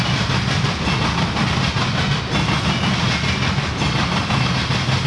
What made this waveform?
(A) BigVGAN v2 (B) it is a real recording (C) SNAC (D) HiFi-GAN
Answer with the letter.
B